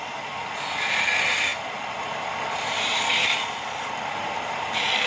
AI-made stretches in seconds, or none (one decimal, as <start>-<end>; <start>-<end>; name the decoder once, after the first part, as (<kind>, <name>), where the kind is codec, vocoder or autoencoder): none